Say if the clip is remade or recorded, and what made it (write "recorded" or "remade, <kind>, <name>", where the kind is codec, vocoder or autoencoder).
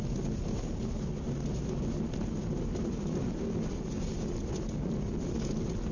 recorded